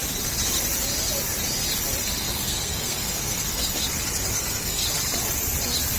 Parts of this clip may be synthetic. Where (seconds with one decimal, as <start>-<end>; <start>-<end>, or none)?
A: 2.2-3.8; 4.3-4.8